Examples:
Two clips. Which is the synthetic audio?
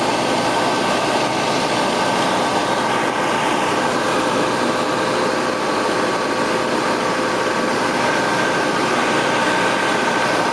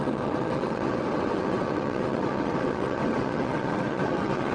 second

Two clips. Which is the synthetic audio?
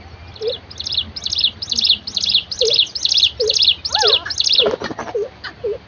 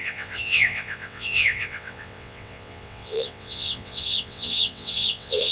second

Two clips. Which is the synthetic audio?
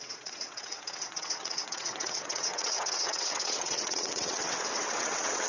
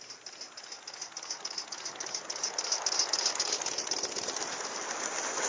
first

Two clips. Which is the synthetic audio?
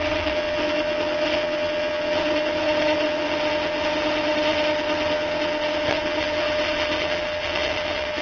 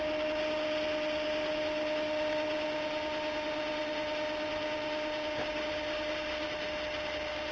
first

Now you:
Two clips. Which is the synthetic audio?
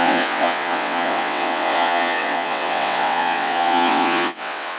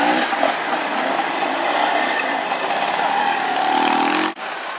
first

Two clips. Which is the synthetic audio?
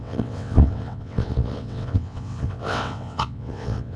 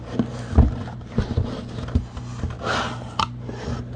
first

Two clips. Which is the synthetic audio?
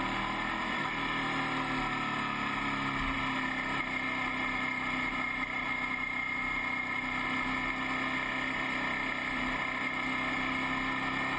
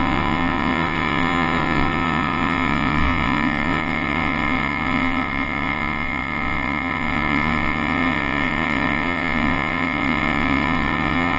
second